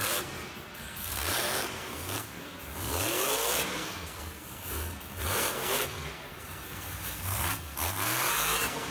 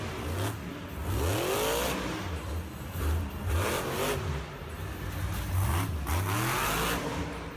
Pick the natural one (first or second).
second